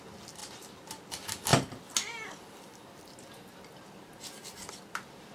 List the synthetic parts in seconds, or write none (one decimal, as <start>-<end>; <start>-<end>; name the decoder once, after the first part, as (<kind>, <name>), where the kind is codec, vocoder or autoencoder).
none